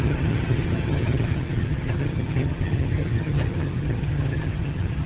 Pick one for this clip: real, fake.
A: fake